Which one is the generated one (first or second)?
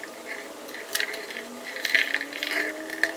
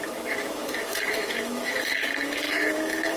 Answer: second